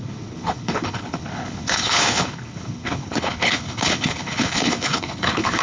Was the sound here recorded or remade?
remade